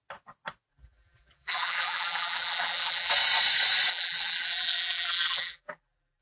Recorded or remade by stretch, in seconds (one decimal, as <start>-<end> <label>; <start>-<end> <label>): 0.0-0.7 recorded; 0.7-3.1 remade; 3.1-3.9 recorded; 3.9-6.2 remade